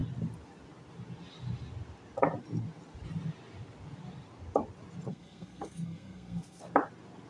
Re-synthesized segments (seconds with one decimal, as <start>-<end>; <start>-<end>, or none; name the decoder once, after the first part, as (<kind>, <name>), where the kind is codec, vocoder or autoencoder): 5.1-6.6 (codec, SNAC)